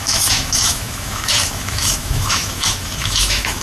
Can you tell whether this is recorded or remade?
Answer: remade